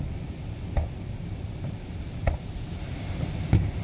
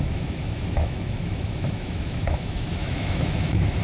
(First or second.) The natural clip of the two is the first